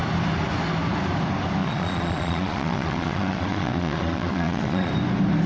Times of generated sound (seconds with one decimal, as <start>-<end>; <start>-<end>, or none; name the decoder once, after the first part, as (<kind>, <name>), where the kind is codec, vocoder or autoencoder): 1.6-4.9 (vocoder, Vocos)